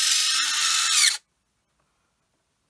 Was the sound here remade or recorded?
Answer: recorded